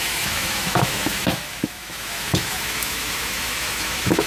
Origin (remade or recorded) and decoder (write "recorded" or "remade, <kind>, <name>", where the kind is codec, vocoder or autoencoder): remade, autoencoder, DAC-VAE